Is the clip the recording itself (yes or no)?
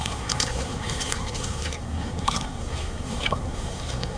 no